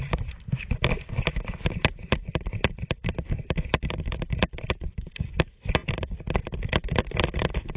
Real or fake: real